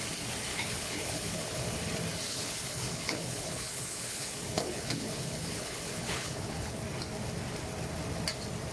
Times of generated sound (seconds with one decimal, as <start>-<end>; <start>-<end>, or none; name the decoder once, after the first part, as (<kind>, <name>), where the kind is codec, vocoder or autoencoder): 0.5-1.6 (codec, HILCodec); 2.3-6.8